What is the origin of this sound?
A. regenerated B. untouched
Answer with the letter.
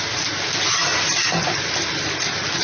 B